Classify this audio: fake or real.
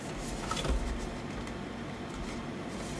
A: real